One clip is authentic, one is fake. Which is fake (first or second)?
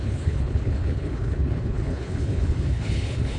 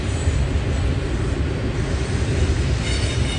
first